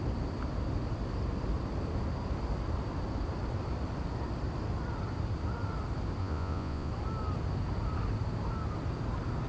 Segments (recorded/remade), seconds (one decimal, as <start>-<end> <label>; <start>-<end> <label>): 0.0-6.2 recorded; 6.2-6.9 remade; 6.9-9.5 recorded